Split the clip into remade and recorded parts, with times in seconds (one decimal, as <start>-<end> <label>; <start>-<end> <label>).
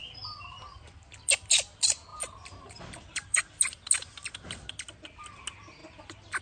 0.0-2.1 recorded; 2.1-3.4 remade; 3.4-6.4 recorded